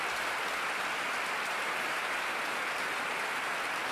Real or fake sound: real